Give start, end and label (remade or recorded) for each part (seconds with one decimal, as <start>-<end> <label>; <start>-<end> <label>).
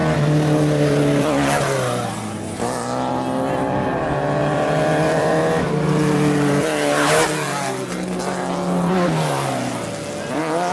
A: 0.0-4.4 recorded; 4.4-5.3 remade; 5.3-10.7 recorded